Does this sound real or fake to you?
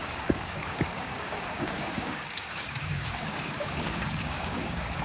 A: fake